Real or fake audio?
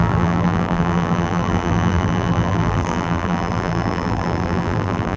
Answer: fake